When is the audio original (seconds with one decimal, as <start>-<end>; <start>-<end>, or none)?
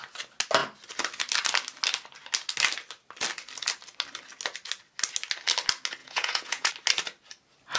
0.0-6.0; 6.7-7.8